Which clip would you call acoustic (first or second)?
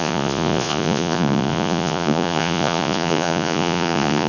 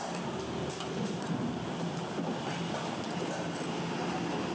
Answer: second